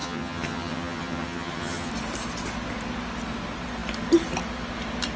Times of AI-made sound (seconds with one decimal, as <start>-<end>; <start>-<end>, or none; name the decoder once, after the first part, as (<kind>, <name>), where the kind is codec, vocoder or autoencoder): 0.0-1.9 (vocoder, HiFi-GAN)